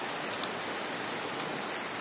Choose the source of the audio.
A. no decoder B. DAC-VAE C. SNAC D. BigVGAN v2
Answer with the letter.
A